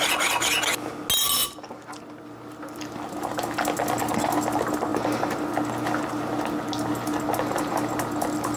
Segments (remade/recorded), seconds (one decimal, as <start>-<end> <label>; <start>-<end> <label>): 0.0-1.4 recorded; 1.4-3.4 remade; 3.4-8.6 recorded